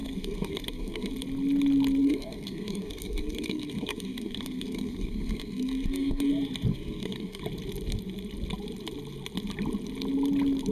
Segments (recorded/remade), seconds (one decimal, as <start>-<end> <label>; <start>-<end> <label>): 0.0-1.1 remade; 1.1-2.0 recorded; 2.0-6.3 remade; 6.3-6.7 recorded; 6.7-7.4 remade; 7.4-10.7 recorded